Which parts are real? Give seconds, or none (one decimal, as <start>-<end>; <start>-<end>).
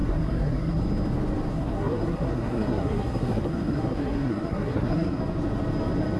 0.8-1.5; 5.2-6.2